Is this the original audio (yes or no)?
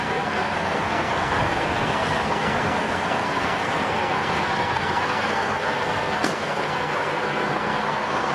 no